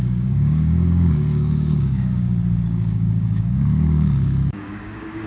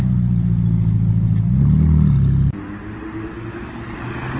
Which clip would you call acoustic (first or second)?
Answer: second